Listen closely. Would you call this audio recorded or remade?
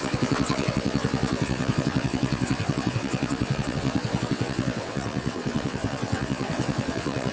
remade